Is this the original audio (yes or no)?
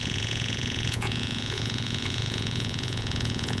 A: no